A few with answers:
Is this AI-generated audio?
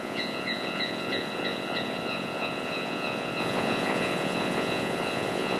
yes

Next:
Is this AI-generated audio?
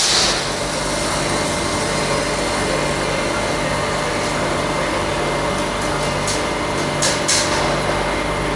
no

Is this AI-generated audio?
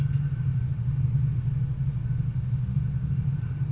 no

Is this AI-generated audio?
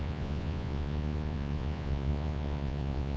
yes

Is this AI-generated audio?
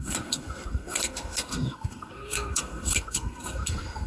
yes